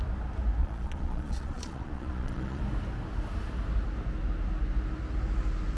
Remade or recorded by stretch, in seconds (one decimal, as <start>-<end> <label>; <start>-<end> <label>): 0.0-0.6 recorded; 0.6-2.6 remade; 2.6-5.8 recorded